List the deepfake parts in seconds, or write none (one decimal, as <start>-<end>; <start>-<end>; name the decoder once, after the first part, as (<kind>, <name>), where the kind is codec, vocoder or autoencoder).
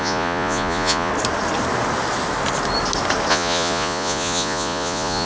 0.0-1.1 (vocoder, Vocos); 3.3-5.3